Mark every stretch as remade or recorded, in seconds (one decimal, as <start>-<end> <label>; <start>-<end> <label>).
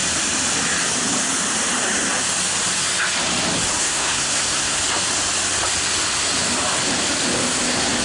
0.0-3.8 recorded; 3.8-4.8 remade; 4.8-8.0 recorded